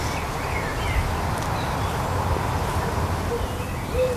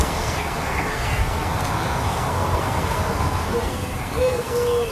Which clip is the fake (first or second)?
second